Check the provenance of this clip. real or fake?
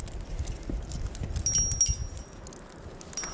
real